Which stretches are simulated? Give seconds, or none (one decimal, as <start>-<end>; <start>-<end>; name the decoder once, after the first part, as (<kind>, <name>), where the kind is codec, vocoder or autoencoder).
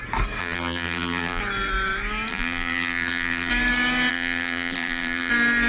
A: 0.4-1.4 (vocoder, BigVGAN v2); 2.3-3.5; 4.1-5.3